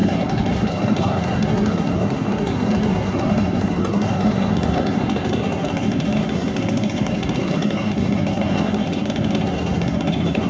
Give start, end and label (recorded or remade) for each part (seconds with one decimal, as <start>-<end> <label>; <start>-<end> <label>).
0.0-10.5 remade